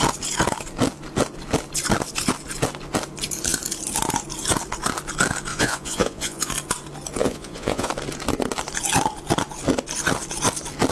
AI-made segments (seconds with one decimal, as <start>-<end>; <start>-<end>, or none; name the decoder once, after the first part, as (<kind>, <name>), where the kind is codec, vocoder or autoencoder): 5.5-6.5 (vocoder, Vocos); 7.2-7.9